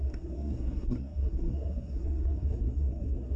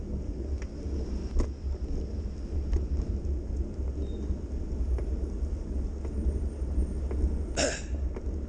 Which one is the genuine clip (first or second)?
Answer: second